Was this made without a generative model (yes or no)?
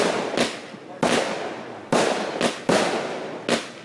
yes